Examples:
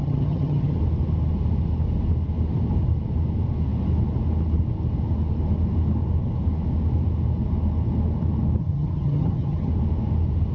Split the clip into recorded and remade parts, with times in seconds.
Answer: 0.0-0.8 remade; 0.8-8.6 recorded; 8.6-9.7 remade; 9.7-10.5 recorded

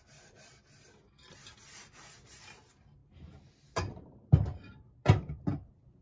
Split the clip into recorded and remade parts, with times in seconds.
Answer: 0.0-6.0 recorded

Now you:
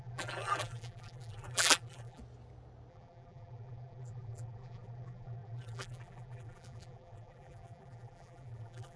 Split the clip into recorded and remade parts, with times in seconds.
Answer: 0.0-2.2 remade; 2.2-2.9 recorded; 2.9-9.0 remade